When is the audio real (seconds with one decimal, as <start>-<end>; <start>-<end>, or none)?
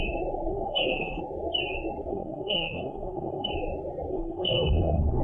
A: 0.0-0.5; 1.2-2.1; 3.5-4.1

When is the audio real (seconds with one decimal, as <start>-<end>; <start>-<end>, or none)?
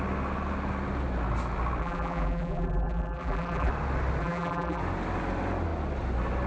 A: 0.0-1.8; 3.7-4.2; 4.8-6.5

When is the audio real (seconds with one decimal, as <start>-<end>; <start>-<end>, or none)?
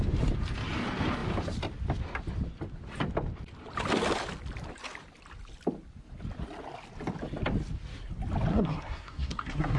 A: 0.0-8.5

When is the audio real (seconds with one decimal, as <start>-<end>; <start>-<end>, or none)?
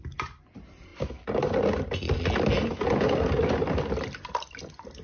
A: 0.0-5.0